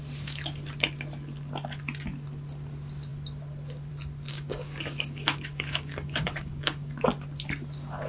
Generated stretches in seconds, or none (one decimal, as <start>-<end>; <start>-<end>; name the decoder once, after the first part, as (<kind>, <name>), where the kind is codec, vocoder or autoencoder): 4.3-6.9 (codec, DAC)